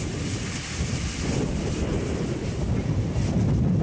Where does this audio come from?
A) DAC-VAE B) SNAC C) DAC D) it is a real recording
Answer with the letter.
D